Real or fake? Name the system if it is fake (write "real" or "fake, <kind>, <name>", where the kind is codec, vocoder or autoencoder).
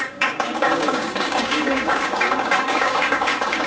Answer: fake, codec, DAC